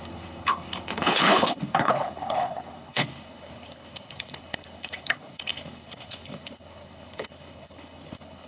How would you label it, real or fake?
fake